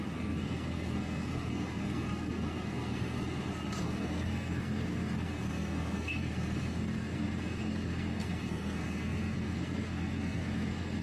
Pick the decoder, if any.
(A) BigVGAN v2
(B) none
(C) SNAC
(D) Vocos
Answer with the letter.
C